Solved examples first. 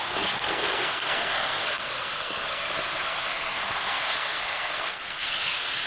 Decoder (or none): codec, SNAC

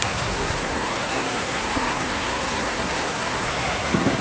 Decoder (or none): codec, SNAC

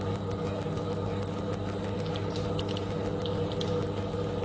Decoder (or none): none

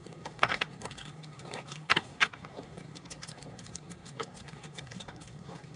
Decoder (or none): codec, SNAC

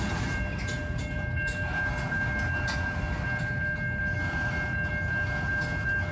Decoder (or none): none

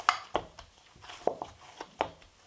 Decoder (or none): none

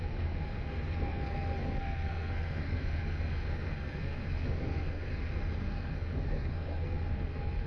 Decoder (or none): codec, SNAC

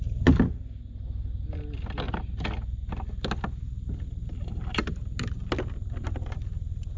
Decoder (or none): none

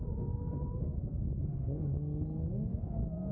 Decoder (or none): none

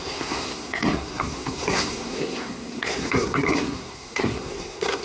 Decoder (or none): codec, SNAC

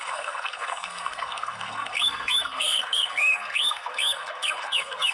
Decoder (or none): codec, SNAC